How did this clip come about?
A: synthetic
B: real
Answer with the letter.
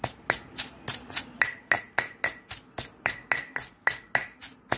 B